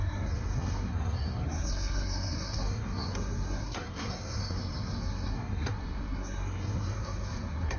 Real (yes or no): no